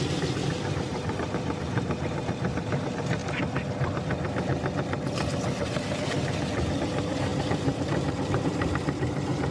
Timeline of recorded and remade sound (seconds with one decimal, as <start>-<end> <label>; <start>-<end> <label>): 0.0-3.2 remade; 3.2-6.8 recorded; 6.8-9.5 remade